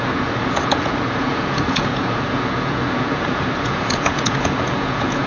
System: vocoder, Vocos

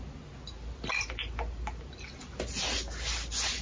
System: none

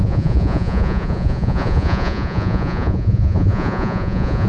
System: vocoder, Vocos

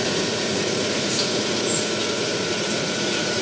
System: vocoder, Vocos